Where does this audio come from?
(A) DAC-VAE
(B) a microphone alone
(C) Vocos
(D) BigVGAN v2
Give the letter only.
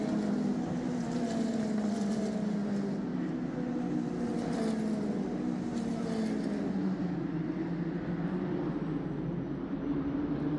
B